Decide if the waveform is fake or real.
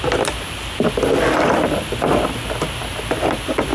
real